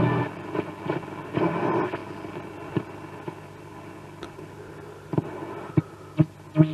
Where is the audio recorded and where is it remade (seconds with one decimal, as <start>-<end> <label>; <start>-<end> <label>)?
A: 0.0-6.7 recorded